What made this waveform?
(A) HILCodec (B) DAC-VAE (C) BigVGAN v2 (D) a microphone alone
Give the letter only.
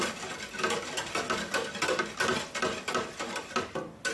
D